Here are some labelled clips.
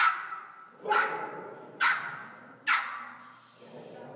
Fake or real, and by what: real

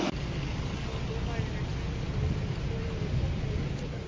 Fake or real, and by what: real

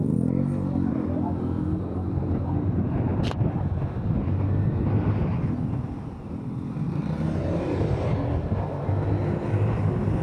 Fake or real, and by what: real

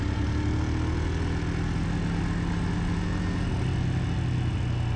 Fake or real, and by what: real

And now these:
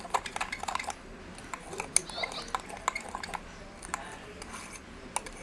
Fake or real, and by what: real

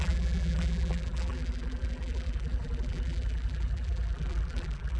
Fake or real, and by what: fake, vocoder, BigVGAN v2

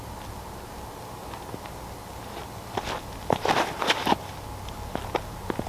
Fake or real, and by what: real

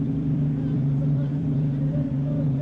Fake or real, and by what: fake, vocoder, BigVGAN v2